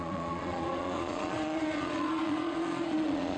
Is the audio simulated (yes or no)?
yes